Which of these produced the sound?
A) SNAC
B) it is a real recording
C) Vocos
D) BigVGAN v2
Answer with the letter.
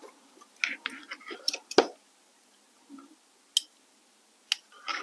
B